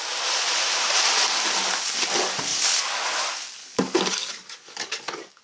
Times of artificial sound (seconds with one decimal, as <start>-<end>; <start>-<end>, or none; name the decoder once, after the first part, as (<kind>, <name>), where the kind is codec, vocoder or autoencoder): 2.5-3.2 (codec, DAC); 3.6-5.4

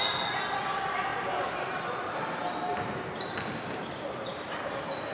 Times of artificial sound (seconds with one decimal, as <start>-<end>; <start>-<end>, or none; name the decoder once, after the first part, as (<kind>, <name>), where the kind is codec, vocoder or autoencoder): 1.1-1.8 (vocoder, BigVGAN v2); 4.3-5.1